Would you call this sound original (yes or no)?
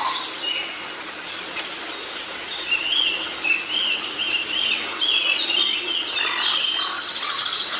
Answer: yes